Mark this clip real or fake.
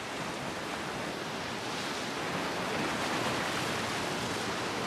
real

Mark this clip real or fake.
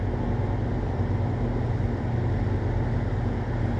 real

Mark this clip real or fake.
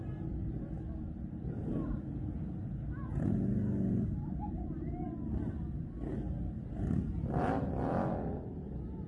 real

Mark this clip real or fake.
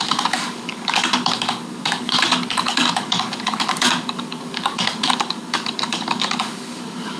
fake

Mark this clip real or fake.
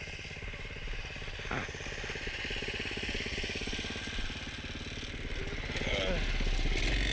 real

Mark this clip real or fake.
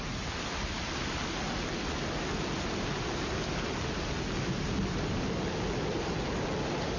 real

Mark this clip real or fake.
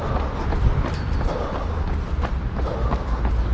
real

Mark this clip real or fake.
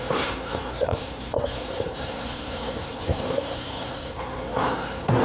fake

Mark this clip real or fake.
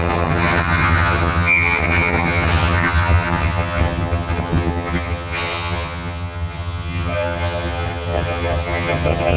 fake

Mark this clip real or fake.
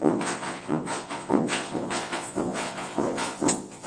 fake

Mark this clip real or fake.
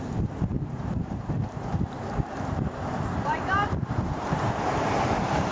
fake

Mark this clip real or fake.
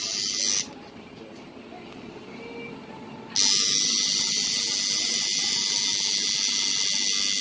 real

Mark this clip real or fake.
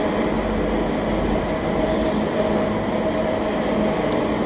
real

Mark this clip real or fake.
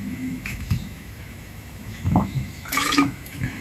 fake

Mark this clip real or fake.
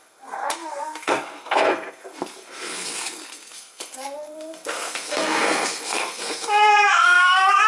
fake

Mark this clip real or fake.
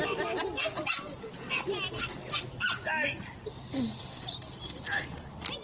real